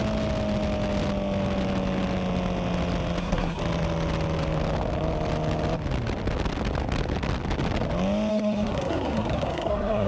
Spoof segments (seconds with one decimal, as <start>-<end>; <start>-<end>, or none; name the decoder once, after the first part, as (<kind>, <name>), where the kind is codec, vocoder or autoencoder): 3.2-3.6 (codec, SNAC); 8.3-10.1